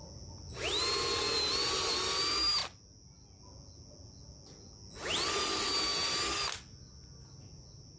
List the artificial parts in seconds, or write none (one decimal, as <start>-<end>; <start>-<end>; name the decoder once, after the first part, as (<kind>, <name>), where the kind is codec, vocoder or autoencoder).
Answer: none